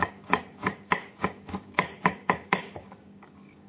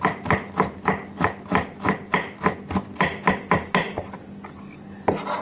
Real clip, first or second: second